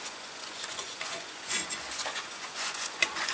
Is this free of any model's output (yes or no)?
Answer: no